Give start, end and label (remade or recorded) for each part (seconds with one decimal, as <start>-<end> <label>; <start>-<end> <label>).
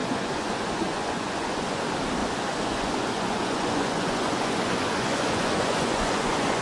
0.0-1.8 remade; 1.8-2.2 recorded; 2.2-6.6 remade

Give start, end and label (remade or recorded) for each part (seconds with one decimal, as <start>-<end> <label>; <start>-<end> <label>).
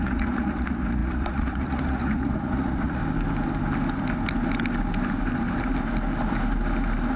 0.0-3.0 remade; 3.0-7.2 recorded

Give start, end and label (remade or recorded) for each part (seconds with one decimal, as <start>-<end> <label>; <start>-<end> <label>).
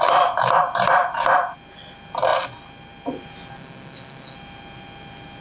0.0-5.4 recorded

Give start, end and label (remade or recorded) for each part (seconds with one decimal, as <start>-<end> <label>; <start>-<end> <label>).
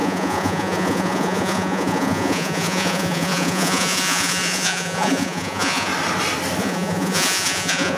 0.0-5.9 remade; 5.9-6.6 recorded; 6.6-8.0 remade